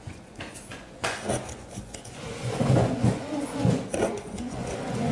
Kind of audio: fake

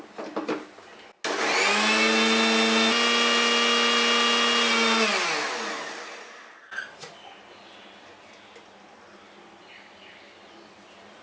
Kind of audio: real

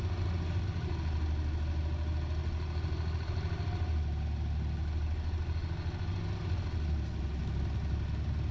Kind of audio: real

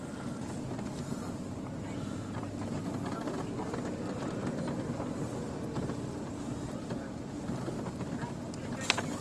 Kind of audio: real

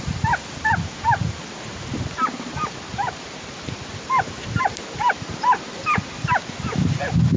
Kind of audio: fake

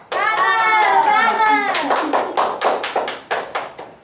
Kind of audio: real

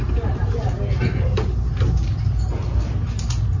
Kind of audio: real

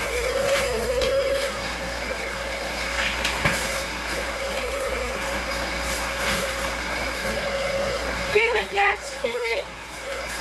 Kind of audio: fake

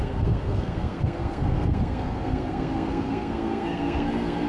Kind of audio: fake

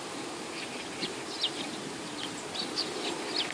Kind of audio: real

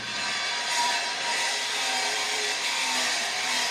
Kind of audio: fake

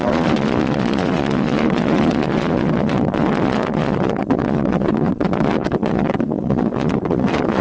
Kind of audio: fake